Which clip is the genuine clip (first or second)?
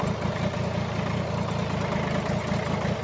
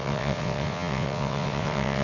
first